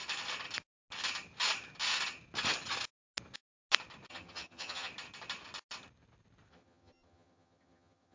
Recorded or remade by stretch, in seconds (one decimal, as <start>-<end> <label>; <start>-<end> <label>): 0.0-4.1 recorded; 4.1-4.9 remade; 4.9-6.5 recorded; 6.5-8.1 remade